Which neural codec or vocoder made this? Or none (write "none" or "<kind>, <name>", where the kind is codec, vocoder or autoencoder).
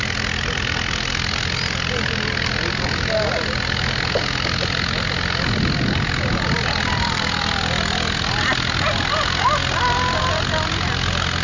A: none